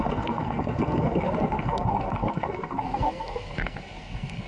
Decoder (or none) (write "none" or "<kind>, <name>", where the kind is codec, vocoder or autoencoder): codec, SNAC